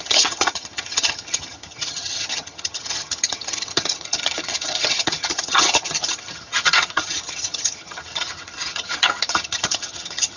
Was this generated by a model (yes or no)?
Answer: yes